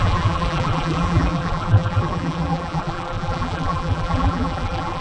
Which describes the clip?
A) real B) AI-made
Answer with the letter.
B